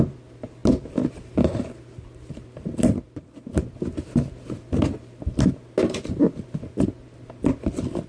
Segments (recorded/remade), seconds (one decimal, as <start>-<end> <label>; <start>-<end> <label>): 0.0-8.1 recorded